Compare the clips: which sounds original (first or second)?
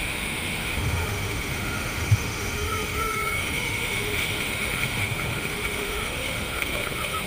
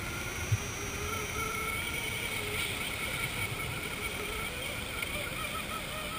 second